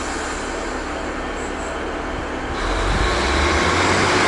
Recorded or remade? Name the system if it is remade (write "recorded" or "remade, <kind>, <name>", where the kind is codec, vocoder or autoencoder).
recorded